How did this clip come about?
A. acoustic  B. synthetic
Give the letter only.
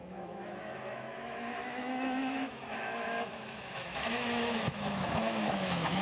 B